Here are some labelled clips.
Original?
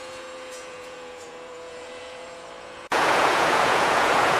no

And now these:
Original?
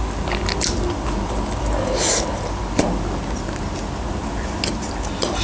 yes